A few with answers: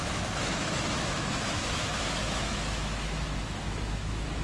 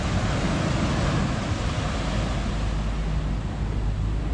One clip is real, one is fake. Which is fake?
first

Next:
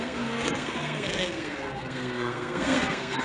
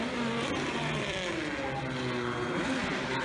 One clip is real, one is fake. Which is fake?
first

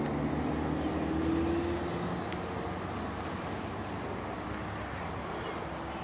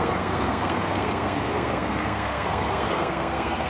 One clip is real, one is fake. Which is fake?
second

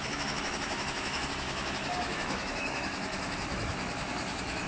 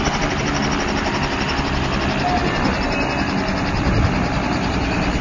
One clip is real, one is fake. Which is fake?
first